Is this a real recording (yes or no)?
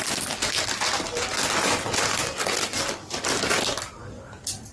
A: yes